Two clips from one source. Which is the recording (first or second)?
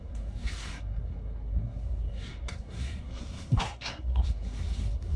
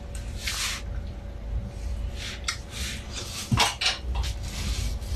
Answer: second